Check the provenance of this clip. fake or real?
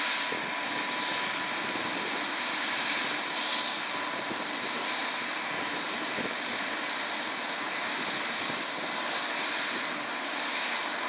real